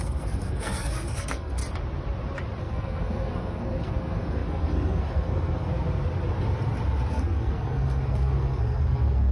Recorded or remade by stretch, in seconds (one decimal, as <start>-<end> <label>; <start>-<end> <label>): 0.0-1.6 remade; 1.6-2.6 recorded; 2.6-5.7 remade; 5.7-7.1 recorded; 7.1-9.3 remade